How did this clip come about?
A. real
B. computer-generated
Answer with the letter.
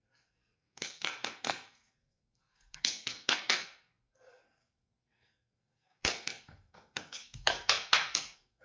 B